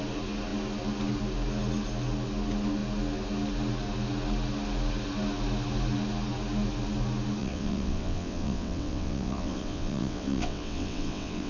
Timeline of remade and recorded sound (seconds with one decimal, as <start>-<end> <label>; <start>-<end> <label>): 0.0-7.4 recorded; 7.4-11.5 remade